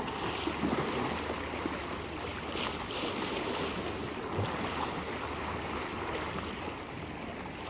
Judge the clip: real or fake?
real